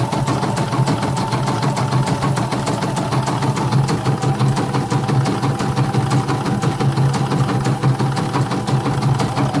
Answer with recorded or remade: recorded